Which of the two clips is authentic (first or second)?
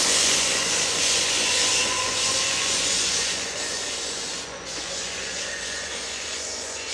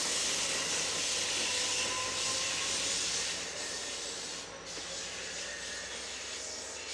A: second